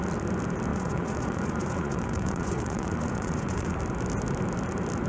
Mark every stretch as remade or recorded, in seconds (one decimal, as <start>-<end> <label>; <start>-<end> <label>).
0.0-0.7 recorded; 0.7-3.8 remade; 3.8-5.1 recorded